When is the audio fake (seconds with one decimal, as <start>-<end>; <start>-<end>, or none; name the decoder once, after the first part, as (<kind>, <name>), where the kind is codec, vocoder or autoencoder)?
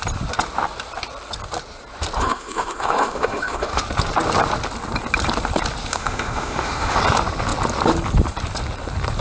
2.2-3.8 (autoencoder, DAC-VAE); 5.9-7.0